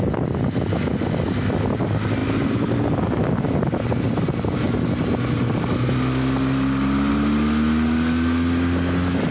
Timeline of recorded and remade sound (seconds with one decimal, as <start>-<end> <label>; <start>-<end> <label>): 0.0-9.3 recorded